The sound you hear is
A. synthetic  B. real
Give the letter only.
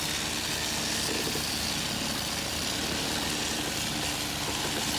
B